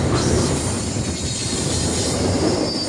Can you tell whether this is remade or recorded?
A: recorded